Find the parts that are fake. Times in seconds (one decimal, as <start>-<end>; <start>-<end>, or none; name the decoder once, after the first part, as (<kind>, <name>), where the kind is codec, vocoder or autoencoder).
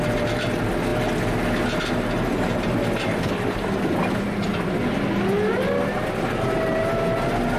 none